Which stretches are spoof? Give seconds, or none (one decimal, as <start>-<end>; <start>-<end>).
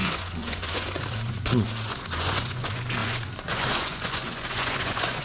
0.0-5.2